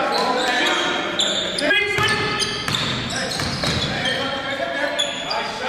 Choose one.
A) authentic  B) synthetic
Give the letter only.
A